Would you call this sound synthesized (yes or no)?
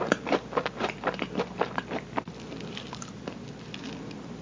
yes